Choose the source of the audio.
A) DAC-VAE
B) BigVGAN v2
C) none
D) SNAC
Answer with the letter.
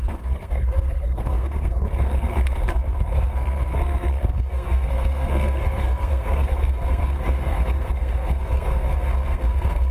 D